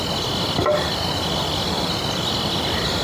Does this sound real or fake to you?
real